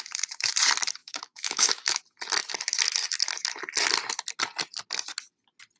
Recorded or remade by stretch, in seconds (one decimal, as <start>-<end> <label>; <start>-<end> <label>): 0.0-1.0 recorded; 1.0-2.0 remade; 2.0-5.8 recorded